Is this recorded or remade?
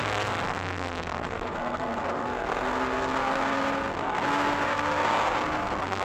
remade